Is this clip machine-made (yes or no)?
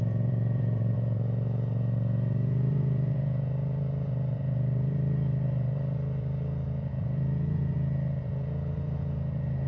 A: yes